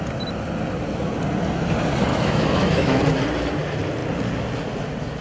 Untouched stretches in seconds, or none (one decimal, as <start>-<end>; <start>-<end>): 0.0-2.1; 3.0-5.2